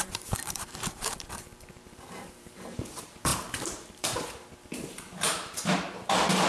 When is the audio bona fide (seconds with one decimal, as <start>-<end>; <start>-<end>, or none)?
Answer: none